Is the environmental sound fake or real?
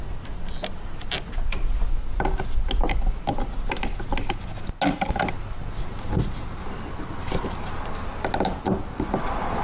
real